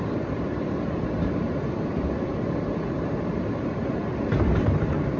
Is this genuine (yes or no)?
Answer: no